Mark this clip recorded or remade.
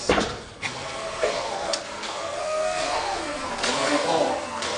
remade